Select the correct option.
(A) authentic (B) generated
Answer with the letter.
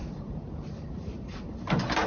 B